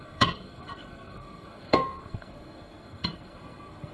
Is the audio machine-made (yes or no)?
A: yes